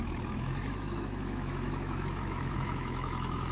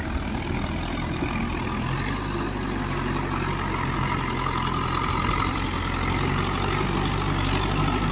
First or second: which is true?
second